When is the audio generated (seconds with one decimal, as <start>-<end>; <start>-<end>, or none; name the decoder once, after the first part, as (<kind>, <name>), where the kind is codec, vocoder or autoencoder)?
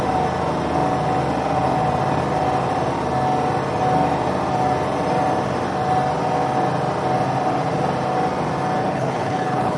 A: 8.8-9.8 (codec, HILCodec)